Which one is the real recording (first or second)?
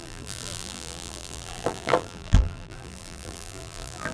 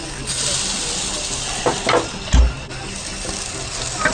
second